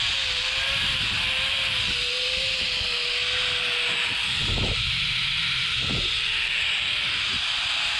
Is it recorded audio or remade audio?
recorded